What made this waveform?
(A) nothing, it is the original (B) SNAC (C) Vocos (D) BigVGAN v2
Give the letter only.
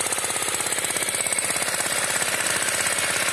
A